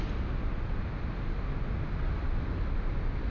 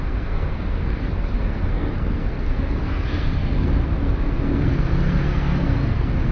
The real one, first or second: first